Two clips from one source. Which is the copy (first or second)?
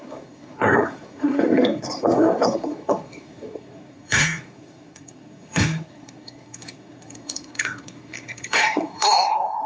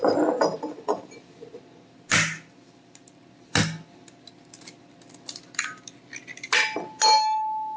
first